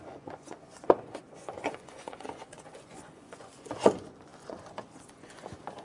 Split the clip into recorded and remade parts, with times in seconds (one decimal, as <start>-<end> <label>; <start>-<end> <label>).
0.0-5.8 remade